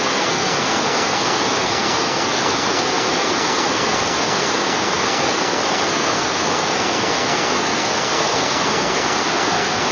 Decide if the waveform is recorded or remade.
remade